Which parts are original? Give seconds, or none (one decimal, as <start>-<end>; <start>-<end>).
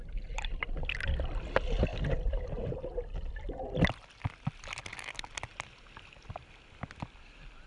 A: 0.0-7.7